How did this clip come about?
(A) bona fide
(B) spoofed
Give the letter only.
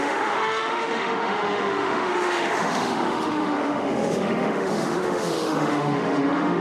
B